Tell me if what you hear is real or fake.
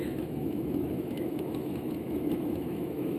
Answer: fake